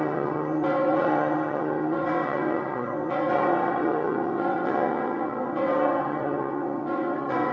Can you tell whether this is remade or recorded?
remade